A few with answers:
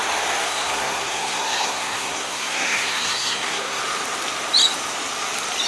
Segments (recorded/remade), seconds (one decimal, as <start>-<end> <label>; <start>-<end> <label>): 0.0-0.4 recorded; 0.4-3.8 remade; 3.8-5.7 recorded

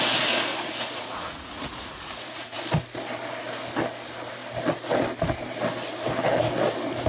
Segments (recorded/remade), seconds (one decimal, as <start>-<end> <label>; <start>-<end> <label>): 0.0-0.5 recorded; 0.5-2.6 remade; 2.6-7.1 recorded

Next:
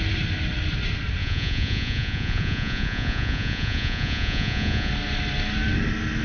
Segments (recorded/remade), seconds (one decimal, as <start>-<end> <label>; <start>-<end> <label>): 0.0-1.2 recorded; 1.2-4.9 remade; 4.9-6.2 recorded

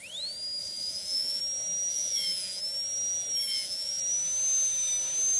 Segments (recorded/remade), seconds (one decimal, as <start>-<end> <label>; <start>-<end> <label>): 0.0-0.6 recorded; 0.6-1.4 remade; 1.4-1.9 recorded; 1.9-2.6 remade; 2.6-3.5 recorded; 3.5-4.0 remade; 4.0-5.4 recorded

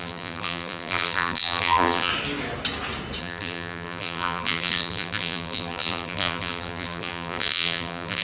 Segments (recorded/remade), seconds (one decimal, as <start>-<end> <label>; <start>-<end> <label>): 0.0-2.1 remade; 2.1-3.2 recorded; 3.2-8.2 remade